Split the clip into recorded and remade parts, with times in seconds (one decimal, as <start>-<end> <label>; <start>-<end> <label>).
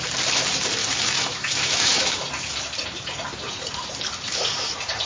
0.0-0.8 recorded; 0.8-2.2 remade; 2.2-5.1 recorded